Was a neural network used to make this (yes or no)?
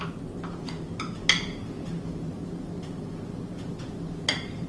no